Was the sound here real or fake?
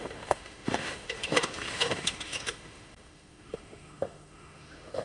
fake